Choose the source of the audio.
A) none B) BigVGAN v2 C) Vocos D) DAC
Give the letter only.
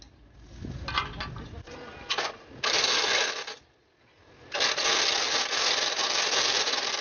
A